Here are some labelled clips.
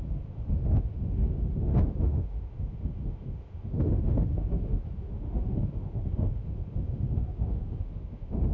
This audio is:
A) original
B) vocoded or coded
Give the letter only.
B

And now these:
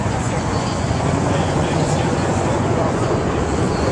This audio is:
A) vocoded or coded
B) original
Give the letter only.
A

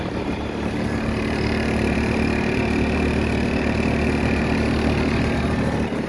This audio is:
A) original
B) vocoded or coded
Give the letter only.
B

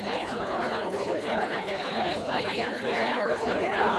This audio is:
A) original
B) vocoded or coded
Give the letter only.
B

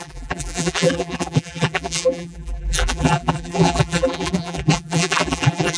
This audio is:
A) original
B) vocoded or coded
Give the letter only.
B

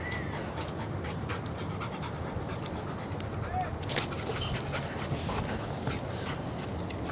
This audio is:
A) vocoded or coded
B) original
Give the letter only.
B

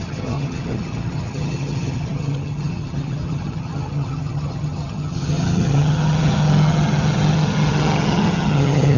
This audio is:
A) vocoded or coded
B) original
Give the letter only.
A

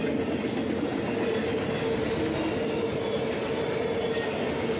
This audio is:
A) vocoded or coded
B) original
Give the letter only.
B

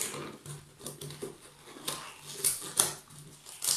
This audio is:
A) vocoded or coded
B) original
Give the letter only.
B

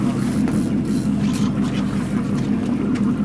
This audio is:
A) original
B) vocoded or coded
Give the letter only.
A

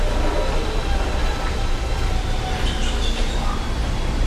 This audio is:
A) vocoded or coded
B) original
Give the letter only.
B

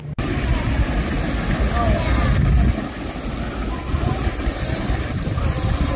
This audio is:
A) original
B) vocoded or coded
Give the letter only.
A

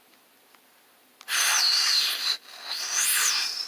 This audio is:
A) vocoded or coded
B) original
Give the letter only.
B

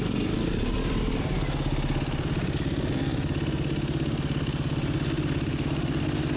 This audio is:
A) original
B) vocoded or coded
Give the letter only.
A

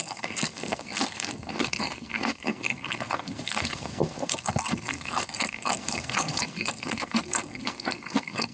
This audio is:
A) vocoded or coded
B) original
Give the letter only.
A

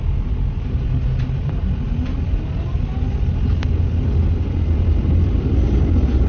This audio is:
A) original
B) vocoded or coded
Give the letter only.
A